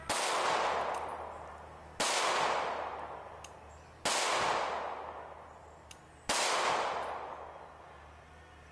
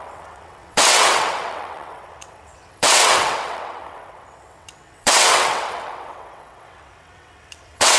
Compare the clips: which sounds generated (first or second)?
second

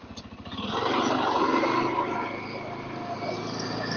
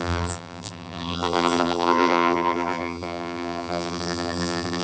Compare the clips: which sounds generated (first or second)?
second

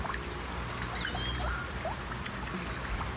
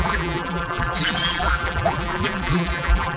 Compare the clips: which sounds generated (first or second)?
second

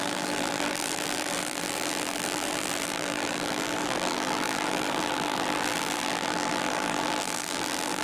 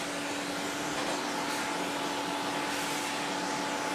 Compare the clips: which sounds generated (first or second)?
first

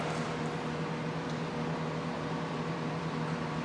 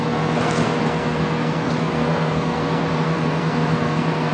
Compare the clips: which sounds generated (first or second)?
second